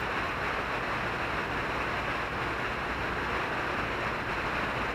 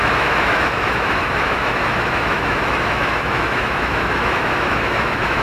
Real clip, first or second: first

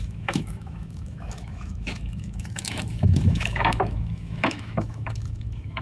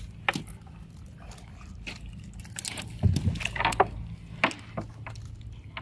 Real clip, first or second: second